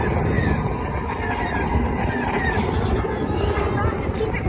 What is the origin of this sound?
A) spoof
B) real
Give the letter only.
B